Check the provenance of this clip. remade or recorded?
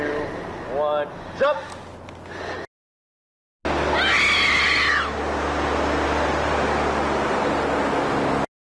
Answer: recorded